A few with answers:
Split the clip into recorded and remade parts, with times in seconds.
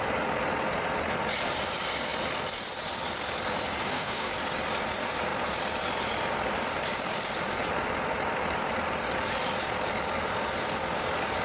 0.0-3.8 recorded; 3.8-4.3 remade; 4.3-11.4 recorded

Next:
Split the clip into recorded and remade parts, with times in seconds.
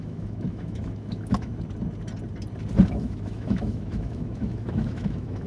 0.0-1.5 remade; 1.5-2.9 recorded; 2.9-5.5 remade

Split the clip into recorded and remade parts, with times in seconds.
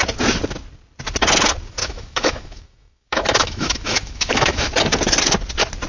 0.0-1.8 recorded; 1.8-4.7 remade; 4.7-5.9 recorded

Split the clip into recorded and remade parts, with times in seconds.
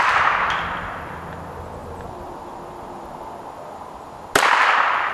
0.0-5.1 recorded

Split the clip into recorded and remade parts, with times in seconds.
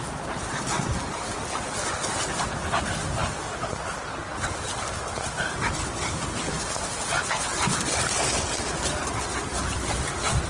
0.0-10.5 recorded